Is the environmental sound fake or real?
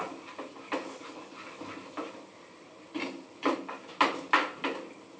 real